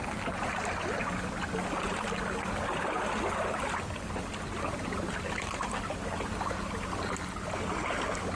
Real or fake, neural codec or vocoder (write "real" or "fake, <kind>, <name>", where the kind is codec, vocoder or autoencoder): real